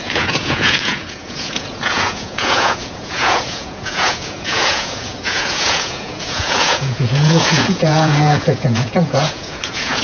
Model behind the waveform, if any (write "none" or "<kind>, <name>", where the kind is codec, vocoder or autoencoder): vocoder, Vocos